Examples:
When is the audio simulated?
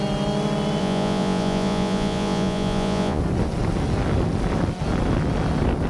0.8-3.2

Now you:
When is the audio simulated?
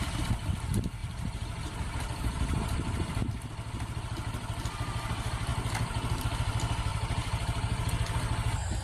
1.0-3.2; 6.9-7.9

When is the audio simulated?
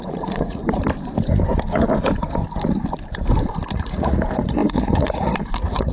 0.0-0.6; 3.7-5.9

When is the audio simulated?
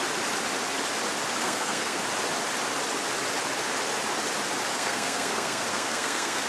1.4-2.0; 4.7-6.5